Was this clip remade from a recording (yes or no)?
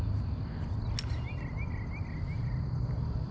no